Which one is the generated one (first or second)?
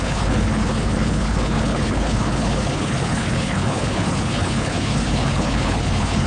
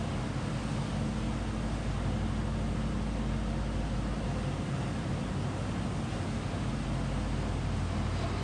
first